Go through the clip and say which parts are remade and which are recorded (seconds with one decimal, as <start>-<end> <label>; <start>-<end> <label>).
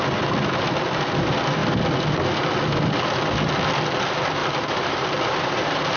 0.0-4.4 recorded; 4.4-6.0 remade